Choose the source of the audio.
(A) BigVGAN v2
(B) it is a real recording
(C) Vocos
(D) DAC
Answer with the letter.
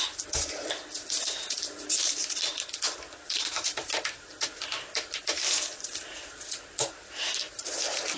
B